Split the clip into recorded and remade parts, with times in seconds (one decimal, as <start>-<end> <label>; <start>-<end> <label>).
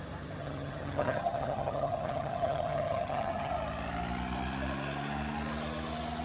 0.0-0.4 recorded; 0.4-3.5 remade; 3.5-6.2 recorded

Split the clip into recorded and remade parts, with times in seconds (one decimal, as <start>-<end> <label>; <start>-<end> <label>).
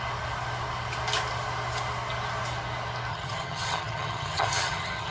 0.0-3.1 recorded; 3.1-5.1 remade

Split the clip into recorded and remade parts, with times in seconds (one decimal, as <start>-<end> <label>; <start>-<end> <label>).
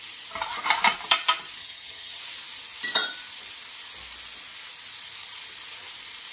0.0-1.6 recorded; 1.6-2.2 remade; 2.2-6.3 recorded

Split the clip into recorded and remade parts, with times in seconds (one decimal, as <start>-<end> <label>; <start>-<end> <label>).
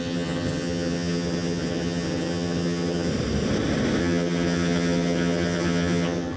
0.0-3.1 remade; 3.1-4.0 recorded; 4.0-6.4 remade